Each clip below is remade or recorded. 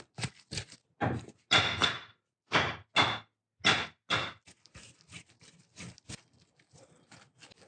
recorded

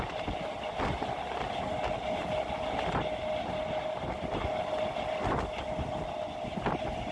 recorded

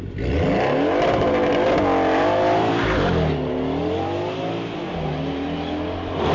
recorded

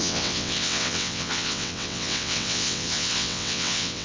remade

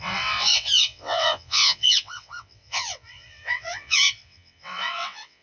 remade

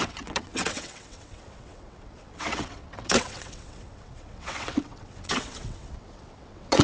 remade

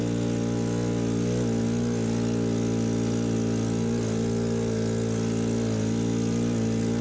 recorded